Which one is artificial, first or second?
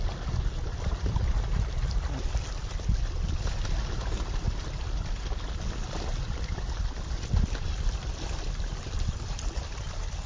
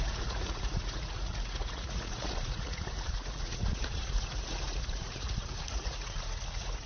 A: second